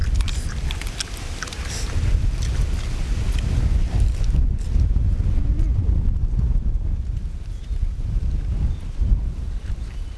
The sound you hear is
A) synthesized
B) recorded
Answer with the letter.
B